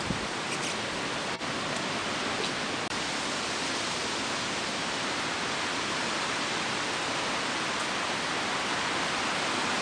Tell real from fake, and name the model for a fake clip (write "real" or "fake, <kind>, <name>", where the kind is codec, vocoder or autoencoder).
real